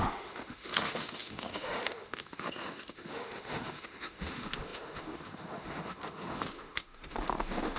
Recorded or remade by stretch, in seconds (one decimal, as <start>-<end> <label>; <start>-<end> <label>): 0.0-7.8 remade